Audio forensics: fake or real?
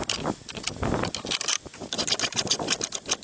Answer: real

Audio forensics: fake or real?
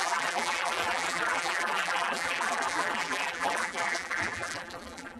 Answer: fake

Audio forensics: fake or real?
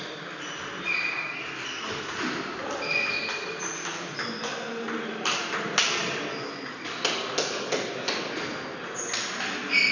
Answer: real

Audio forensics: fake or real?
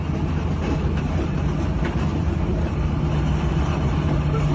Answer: real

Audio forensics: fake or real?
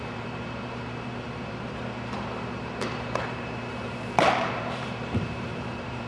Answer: fake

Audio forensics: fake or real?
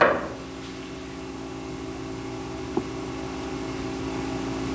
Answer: real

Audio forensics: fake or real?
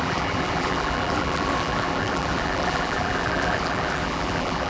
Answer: fake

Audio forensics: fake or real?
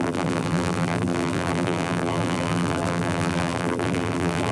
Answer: fake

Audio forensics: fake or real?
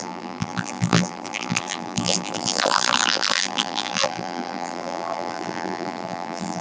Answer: fake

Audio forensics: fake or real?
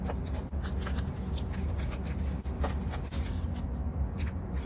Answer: real